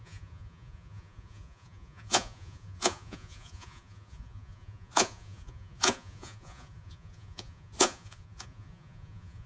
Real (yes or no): no